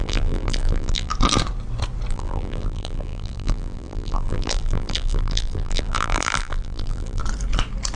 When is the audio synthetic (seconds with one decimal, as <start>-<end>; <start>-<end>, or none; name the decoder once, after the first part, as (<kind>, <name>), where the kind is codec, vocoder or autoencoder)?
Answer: 0.0-1.1 (vocoder, BigVGAN v2); 2.1-7.2